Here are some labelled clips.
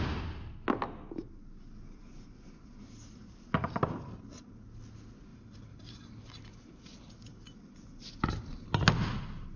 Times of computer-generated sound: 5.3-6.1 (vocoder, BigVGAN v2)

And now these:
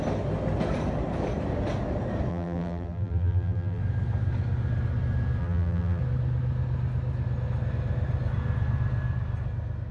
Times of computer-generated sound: 2.3-3.8 (vocoder, BigVGAN v2); 5.4-6.0

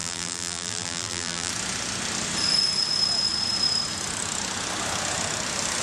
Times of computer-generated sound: 0.0-1.5 (vocoder, BigVGAN v2)

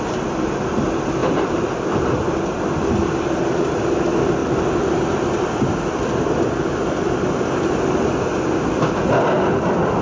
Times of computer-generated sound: 1.2-1.8 (vocoder, BigVGAN v2)